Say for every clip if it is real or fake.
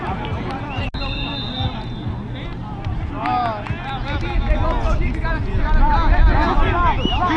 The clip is real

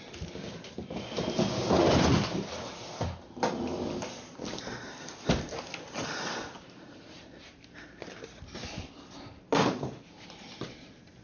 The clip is real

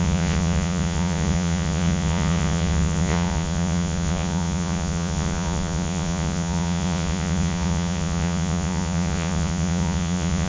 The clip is fake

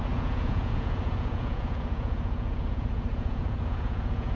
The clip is fake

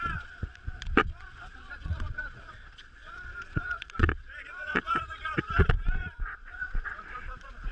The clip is fake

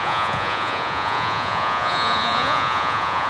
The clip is fake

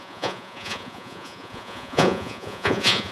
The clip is fake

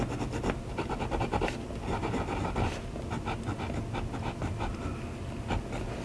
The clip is real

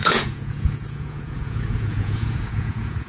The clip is fake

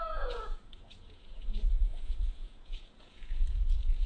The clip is fake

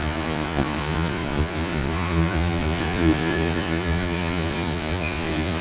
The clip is fake